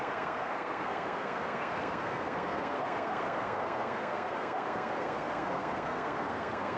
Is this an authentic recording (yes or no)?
no